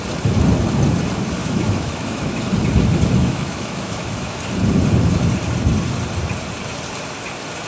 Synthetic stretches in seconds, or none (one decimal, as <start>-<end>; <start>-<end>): 1.4-2.4; 3.2-4.4